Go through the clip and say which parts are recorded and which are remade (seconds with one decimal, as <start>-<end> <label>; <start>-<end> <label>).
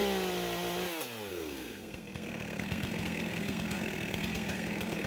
0.0-1.3 recorded; 1.3-5.1 remade